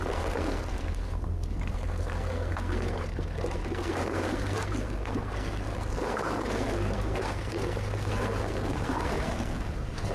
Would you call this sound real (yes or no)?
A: no